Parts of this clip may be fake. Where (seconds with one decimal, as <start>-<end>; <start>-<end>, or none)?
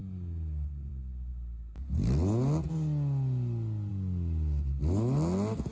none